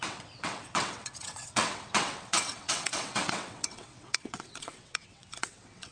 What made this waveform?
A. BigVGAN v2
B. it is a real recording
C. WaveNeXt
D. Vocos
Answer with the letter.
C